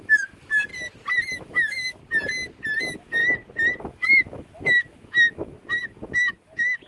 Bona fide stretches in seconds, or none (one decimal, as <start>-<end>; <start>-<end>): 0.7-1.3; 2.0-2.8; 3.2-3.8